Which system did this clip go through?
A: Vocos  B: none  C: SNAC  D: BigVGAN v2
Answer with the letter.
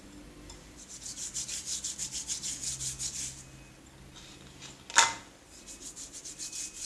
B